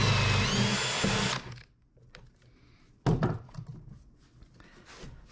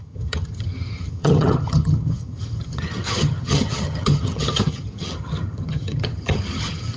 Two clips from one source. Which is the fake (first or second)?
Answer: second